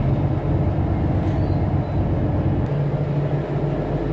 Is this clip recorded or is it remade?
recorded